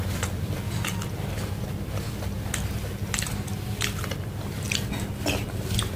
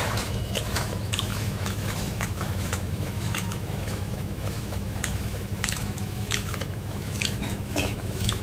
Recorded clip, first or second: first